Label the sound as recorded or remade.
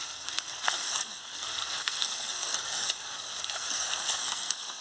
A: remade